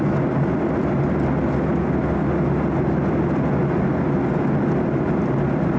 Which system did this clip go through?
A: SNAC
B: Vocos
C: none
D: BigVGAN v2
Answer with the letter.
C